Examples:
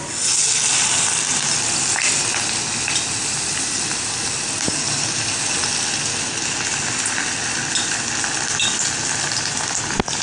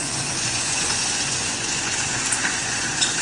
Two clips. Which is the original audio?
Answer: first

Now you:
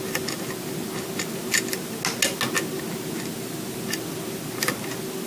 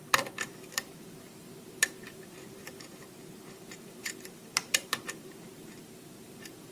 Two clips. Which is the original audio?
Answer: first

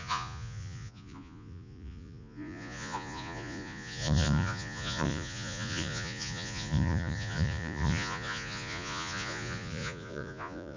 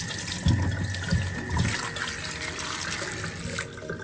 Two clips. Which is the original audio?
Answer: second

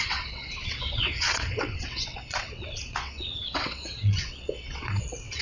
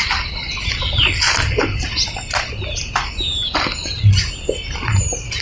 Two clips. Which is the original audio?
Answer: second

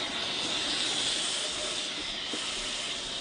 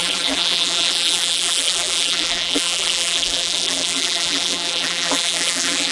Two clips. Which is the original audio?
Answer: first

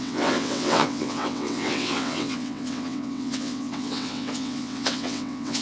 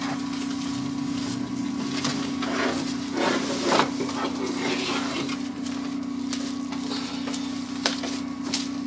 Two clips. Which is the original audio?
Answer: second